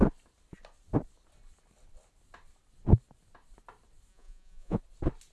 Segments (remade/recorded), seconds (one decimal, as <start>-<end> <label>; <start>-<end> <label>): 0.0-4.1 recorded; 4.1-4.8 remade; 4.8-5.3 recorded